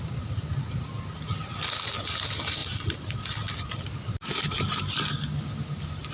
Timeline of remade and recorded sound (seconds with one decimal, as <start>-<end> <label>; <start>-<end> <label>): 0.0-6.1 recorded